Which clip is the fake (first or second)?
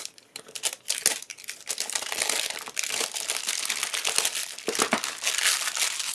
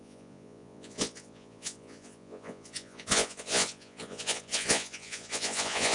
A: second